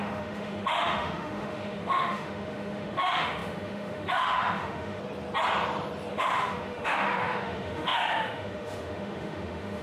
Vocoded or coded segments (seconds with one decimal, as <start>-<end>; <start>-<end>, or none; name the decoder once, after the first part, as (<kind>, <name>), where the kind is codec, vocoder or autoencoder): 0.0-5.0 (autoencoder, DAC-VAE); 6.1-9.8